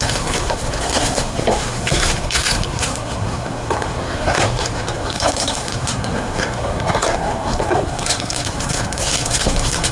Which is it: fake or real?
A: fake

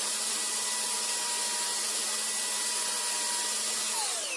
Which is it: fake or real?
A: real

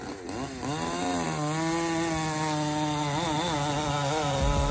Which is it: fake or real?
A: real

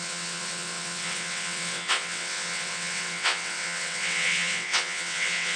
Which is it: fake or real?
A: fake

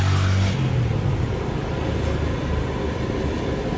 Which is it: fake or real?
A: real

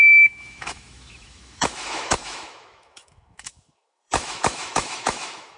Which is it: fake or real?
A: fake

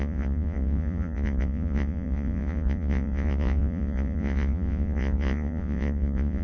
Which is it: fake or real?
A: fake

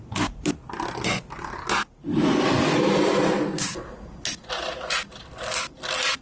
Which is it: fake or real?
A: real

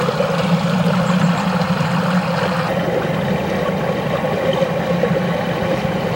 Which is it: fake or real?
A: real